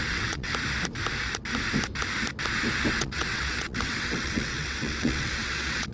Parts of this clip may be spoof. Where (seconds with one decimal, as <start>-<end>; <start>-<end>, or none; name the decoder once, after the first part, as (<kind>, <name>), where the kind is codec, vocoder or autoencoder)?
0.0-0.5 (vocoder, WaveNeXt); 2.9-5.9